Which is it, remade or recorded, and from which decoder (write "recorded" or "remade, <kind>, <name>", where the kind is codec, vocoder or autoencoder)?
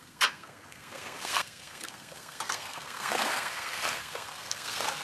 remade, codec, SNAC